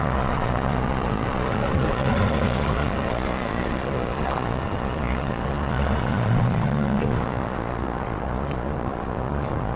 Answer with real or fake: fake